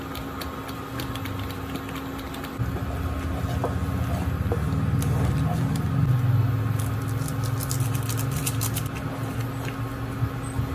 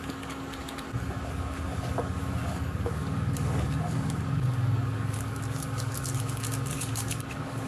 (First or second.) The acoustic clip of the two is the first